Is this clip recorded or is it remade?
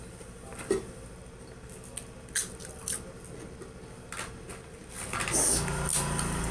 recorded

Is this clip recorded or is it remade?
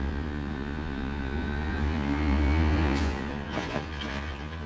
remade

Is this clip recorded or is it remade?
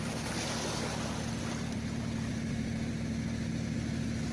recorded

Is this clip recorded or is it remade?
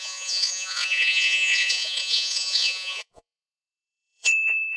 remade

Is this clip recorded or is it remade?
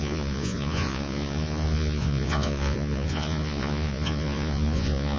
remade